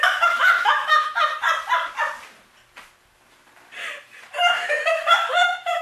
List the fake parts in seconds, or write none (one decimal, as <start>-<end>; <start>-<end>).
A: 0.0-1.3; 4.8-5.8